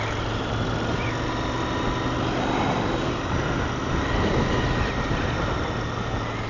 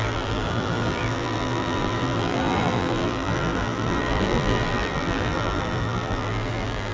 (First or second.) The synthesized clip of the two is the second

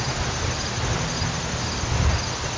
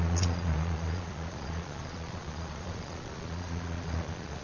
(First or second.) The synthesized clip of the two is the second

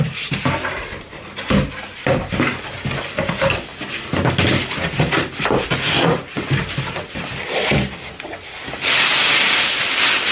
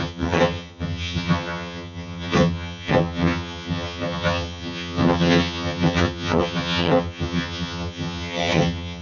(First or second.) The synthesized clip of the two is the second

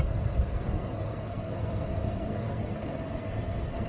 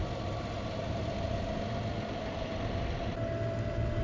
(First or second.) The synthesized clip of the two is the first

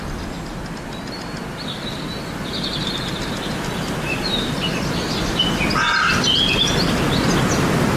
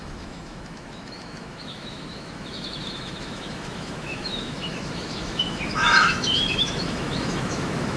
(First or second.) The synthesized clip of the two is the second